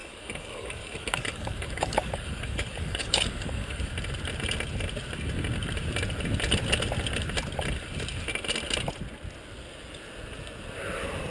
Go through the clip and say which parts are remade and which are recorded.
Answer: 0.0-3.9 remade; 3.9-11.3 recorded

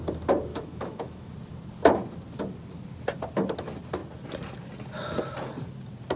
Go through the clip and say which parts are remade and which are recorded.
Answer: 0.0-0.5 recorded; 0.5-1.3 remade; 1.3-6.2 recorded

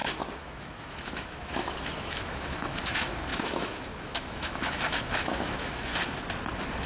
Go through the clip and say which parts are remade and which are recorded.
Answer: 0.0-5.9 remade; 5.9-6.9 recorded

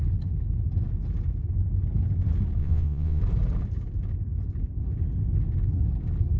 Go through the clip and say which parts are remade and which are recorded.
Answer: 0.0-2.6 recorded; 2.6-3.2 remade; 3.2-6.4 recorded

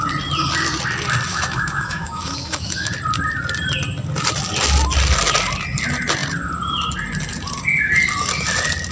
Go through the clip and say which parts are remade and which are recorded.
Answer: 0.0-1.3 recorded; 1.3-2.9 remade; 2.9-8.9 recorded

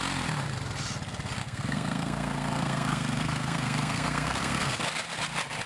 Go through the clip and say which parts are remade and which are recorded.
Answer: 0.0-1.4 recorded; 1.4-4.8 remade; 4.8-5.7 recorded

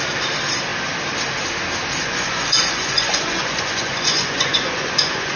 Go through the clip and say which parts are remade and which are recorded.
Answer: 0.0-2.0 recorded; 2.0-5.4 remade